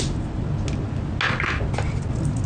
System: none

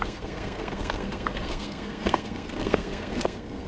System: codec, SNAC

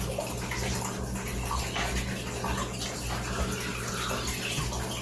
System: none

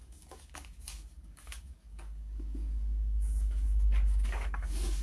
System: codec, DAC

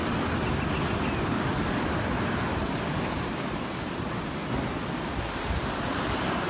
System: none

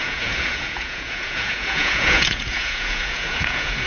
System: vocoder, Vocos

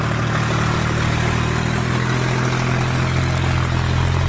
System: none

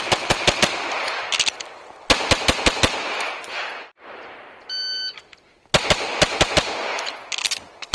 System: none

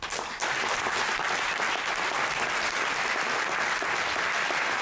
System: none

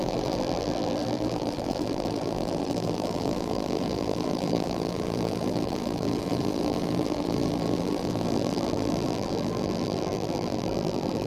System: vocoder, BigVGAN v2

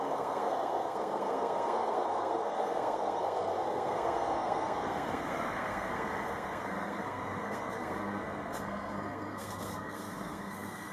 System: codec, SNAC